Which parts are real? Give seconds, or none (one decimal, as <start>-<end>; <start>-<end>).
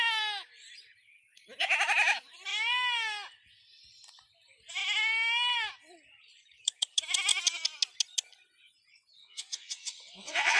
0.0-9.2